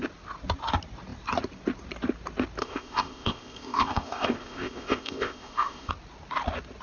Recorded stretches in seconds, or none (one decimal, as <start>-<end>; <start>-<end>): 0.0-2.6; 5.9-6.8